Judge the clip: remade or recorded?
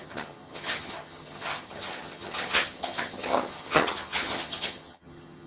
remade